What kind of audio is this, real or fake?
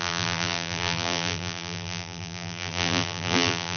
fake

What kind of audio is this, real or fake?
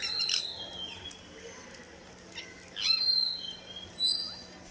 real